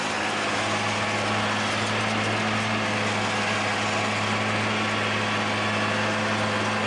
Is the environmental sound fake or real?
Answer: real